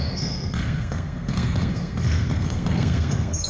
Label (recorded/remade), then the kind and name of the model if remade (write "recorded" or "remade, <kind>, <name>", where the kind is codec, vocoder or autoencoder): remade, codec, SNAC